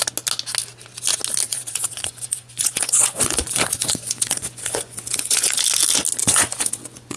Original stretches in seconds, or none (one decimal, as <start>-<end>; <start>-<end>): 0.0-1.5; 5.6-6.2